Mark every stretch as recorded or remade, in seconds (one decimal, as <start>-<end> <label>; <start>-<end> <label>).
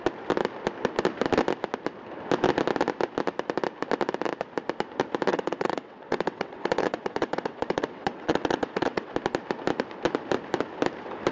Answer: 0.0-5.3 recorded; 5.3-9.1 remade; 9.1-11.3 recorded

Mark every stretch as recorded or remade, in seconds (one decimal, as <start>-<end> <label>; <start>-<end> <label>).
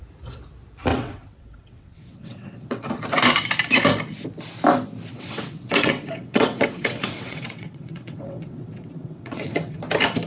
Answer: 0.0-0.9 recorded; 0.9-2.9 remade; 2.9-5.1 recorded; 5.1-9.8 remade; 9.8-10.3 recorded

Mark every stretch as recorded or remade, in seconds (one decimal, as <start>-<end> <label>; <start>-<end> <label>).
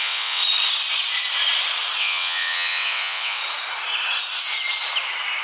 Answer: 0.0-0.4 remade; 0.4-2.0 recorded; 2.0-3.4 remade; 3.4-5.4 recorded